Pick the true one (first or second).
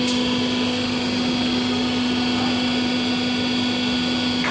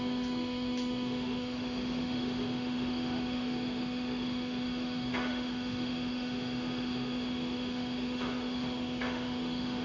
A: first